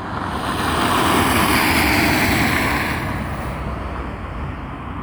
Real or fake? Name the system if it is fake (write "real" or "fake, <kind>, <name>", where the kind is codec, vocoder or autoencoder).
real